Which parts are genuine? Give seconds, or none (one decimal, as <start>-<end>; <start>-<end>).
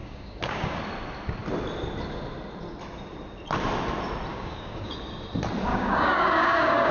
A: 0.8-4.3; 4.9-5.7